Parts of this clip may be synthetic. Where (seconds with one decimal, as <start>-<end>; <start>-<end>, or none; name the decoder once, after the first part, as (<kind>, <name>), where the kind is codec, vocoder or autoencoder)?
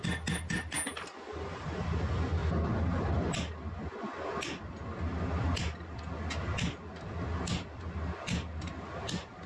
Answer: none